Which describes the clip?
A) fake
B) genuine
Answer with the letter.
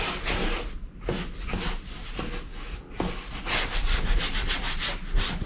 B